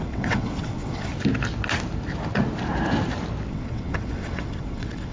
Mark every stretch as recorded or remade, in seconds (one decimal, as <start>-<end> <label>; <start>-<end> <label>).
0.0-1.1 remade; 1.1-3.5 recorded; 3.5-5.1 remade